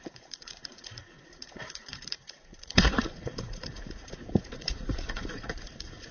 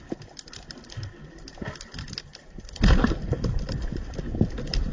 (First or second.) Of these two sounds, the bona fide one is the second